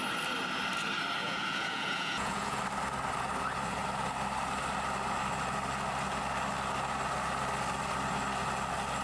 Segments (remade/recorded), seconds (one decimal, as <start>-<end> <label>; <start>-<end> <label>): 0.0-1.2 recorded; 1.2-2.6 remade; 2.6-9.0 recorded